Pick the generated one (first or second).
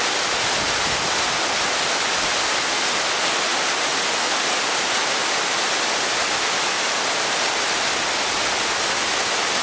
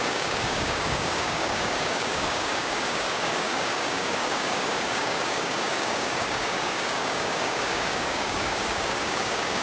second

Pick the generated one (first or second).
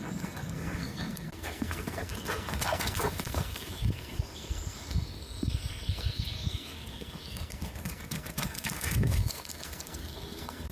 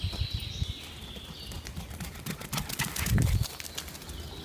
first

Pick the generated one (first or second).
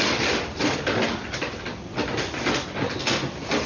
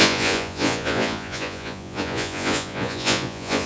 second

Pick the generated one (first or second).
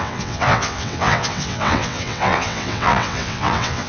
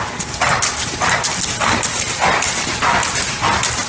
first